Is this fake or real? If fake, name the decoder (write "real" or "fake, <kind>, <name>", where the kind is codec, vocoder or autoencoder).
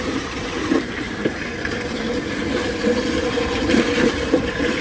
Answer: fake, vocoder, BigVGAN v2